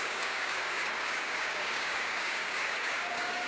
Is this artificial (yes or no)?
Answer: yes